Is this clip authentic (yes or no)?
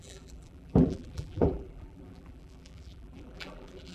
no